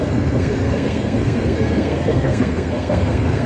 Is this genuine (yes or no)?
no